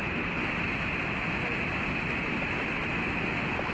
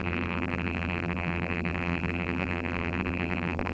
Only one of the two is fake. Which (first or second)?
second